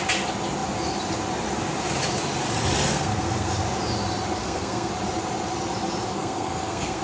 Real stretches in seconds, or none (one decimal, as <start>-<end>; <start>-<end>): 0.0-2.9; 3.6-4.4; 4.9-6.1